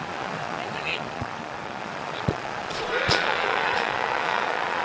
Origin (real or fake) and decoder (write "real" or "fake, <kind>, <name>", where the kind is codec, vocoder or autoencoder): fake, vocoder, Vocos